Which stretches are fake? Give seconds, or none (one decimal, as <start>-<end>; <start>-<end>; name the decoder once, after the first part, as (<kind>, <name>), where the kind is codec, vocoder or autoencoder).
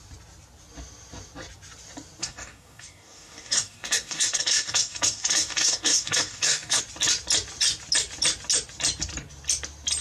2.2-6.8 (codec, DAC)